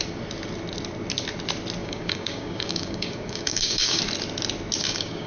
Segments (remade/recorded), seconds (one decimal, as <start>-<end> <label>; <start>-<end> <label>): 0.0-1.8 recorded; 1.8-4.0 remade; 4.0-4.8 recorded; 4.8-5.3 remade